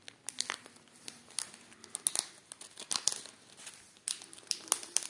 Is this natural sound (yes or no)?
yes